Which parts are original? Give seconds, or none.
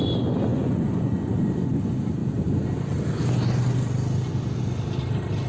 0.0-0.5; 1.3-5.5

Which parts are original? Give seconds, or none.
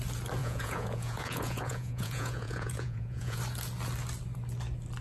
0.0-0.4; 3.4-5.0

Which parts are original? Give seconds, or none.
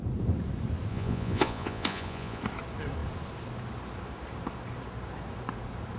0.0-0.9; 2.4-6.0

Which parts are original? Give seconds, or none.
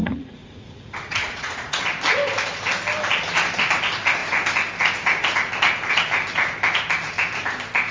1.8-7.9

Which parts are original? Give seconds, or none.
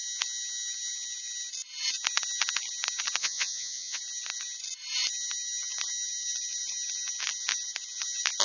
0.0-3.2; 4.0-8.4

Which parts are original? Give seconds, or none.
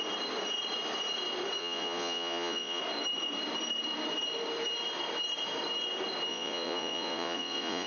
0.0-1.6; 2.8-6.3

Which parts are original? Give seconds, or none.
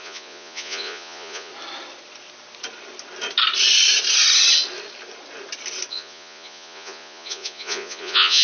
1.5-5.9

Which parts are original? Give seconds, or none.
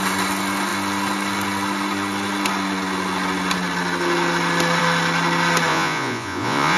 0.0-5.7